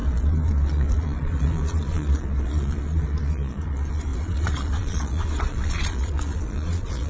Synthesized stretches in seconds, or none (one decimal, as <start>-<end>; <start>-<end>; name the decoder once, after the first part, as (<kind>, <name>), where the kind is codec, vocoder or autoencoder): 0.0-7.1 (vocoder, Vocos)